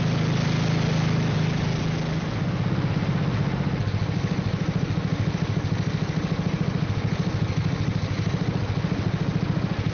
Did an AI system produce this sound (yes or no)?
no